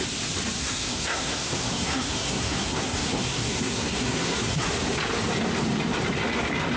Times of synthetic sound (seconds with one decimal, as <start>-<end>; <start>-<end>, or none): 0.6-4.7